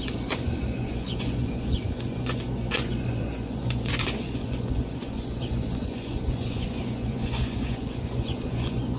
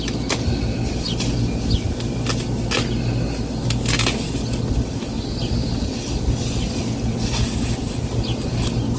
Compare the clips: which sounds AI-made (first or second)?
first